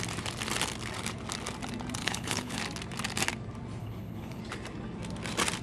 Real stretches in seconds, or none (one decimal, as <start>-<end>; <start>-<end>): 0.0-2.0; 2.6-3.8; 4.4-5.6